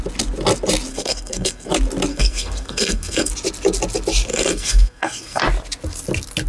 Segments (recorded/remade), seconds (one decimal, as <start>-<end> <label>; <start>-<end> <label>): 0.0-0.9 recorded; 0.9-1.7 remade; 1.7-2.1 recorded; 2.1-3.3 remade; 3.3-4.3 recorded; 4.3-5.4 remade; 5.4-6.5 recorded